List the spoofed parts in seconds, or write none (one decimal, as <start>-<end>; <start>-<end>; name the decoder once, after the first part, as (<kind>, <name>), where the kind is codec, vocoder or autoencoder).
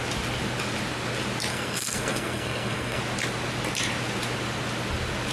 1.5-3.0 (codec, SNAC)